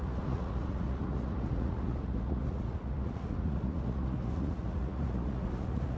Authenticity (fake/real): fake